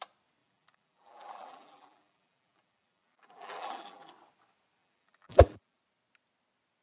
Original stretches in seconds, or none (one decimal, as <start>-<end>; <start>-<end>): 0.0-0.4; 4.1-4.8; 5.8-6.8